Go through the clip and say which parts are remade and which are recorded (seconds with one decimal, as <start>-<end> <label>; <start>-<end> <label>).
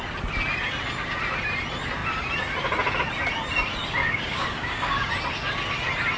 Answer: 0.0-4.0 recorded; 4.0-5.1 remade; 5.1-6.2 recorded